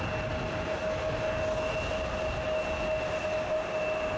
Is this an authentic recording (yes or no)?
yes